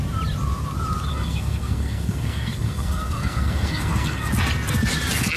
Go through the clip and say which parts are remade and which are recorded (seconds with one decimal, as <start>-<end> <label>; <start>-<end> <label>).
0.0-1.1 recorded; 1.1-4.3 remade; 4.3-5.4 recorded